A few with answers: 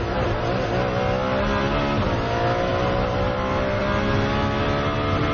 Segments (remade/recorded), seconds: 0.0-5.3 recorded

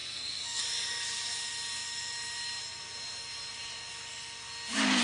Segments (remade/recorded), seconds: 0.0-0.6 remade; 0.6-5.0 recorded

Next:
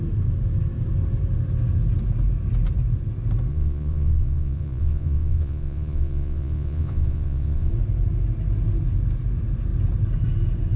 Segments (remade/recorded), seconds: 0.0-3.5 recorded; 3.5-7.7 remade; 7.7-10.8 recorded

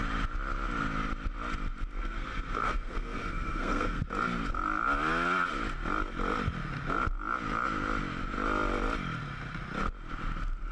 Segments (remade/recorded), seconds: 0.0-2.0 recorded; 2.0-4.0 remade; 4.0-10.7 recorded

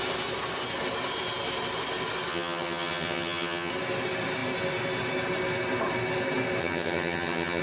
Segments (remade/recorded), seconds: 0.0-2.3 recorded; 2.3-3.7 remade; 3.7-6.6 recorded; 6.6-7.6 remade

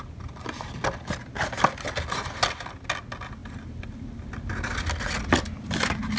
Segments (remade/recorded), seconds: 0.0-6.2 recorded